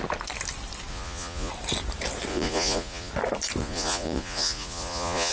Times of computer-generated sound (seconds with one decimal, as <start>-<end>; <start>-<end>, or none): 0.9-1.5; 2.3-3.1; 3.6-5.3

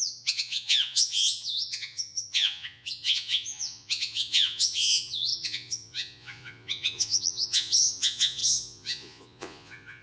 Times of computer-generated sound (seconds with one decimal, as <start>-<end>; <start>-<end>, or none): 0.0-10.0

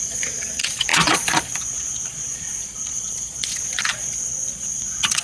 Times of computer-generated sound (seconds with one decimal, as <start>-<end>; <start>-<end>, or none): 0.0-5.2

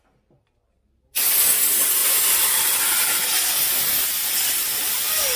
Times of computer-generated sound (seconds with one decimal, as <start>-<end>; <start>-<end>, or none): none

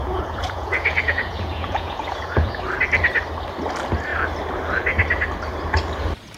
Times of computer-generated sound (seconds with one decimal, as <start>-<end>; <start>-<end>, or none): 0.0-2.6

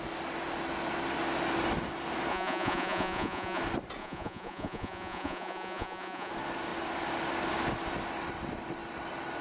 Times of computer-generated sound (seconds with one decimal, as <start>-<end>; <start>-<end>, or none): 2.3-3.6; 4.0-6.3